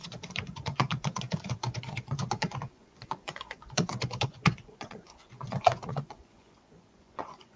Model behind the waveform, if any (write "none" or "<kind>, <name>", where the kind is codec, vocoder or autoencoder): vocoder, Vocos